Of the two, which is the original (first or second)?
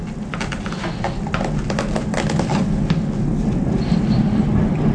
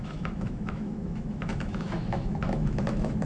first